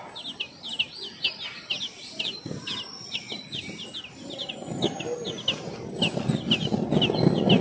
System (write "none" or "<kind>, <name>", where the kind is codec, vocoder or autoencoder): none